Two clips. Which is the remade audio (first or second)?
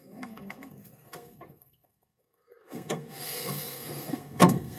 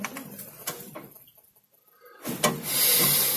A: first